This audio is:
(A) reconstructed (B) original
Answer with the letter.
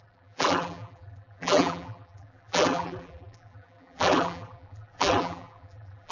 A